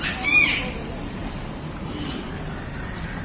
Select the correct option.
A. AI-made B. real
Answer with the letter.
B